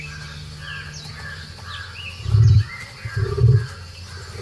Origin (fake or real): real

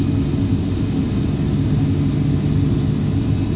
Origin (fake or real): real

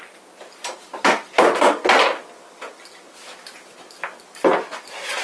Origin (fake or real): real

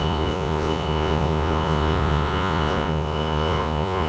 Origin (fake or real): fake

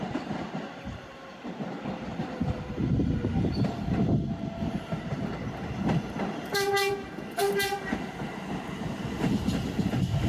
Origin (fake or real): real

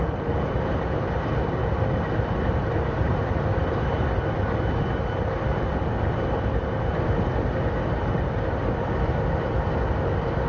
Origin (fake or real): real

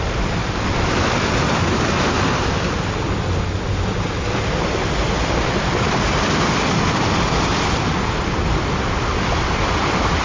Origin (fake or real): real